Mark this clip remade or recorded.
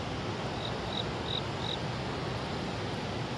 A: recorded